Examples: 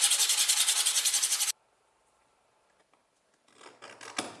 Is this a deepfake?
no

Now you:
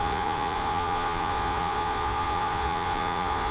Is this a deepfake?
yes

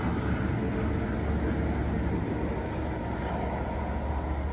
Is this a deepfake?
no